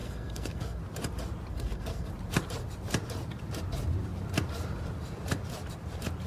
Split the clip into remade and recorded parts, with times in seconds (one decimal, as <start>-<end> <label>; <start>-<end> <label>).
0.0-0.8 remade; 0.8-1.5 recorded; 1.5-2.1 remade; 2.1-6.3 recorded